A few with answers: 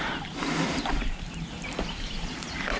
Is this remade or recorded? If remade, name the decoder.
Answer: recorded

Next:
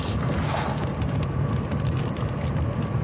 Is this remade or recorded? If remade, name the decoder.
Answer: recorded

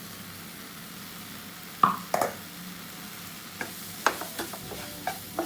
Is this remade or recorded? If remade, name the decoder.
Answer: recorded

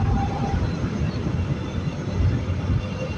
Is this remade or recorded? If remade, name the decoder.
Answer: remade, vocoder, BigVGAN v2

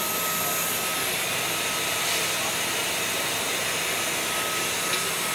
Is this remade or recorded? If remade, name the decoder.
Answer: recorded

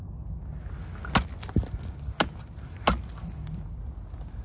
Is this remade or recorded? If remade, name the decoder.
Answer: recorded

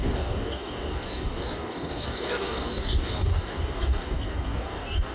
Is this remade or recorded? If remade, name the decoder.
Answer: remade, codec, DAC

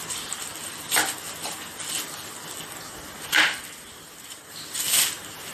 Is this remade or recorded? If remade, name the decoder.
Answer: recorded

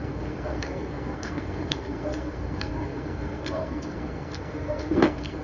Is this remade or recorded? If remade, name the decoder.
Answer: remade, codec, SNAC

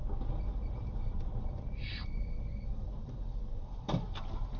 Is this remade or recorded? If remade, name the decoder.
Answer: recorded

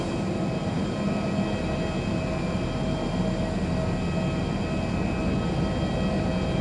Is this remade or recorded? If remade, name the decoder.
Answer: recorded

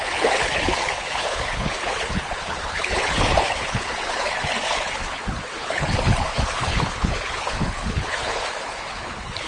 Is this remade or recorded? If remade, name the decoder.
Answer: remade, codec, HILCodec